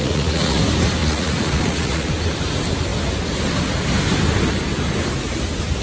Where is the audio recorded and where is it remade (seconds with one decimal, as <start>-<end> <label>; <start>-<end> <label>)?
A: 0.0-0.6 remade; 0.6-1.0 recorded; 1.0-2.1 remade; 2.1-5.8 recorded